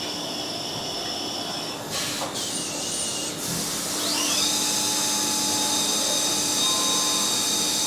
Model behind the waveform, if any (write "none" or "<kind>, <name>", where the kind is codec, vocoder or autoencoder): none